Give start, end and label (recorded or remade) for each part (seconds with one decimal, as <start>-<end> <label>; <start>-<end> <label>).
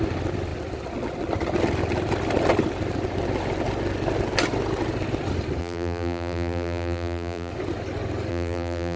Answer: 0.0-5.6 recorded; 5.6-7.5 remade; 7.5-8.3 recorded; 8.3-9.0 remade